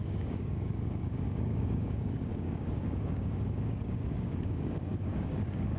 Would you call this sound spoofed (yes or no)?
yes